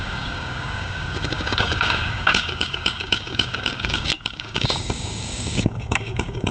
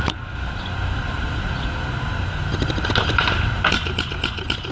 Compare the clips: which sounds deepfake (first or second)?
first